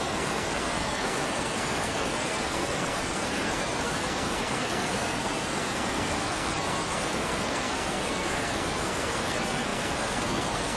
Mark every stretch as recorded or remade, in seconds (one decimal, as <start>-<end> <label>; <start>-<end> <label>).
0.0-10.8 remade